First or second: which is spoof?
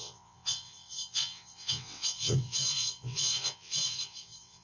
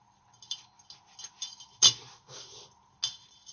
first